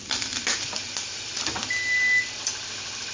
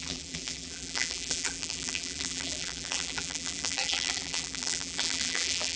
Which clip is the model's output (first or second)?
second